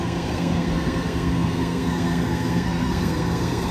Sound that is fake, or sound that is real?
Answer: fake